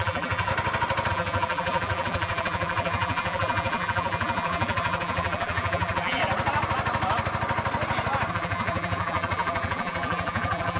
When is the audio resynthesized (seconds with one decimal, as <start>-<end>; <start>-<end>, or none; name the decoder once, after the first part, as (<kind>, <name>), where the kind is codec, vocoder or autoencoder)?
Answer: 0.0-0.5 (vocoder, BigVGAN v2); 1.1-6.2; 8.3-10.8